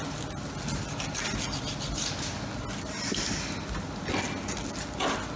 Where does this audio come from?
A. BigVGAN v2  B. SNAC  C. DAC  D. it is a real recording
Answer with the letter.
D